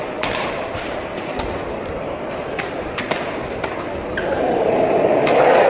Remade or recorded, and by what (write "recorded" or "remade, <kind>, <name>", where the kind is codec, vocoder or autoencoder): recorded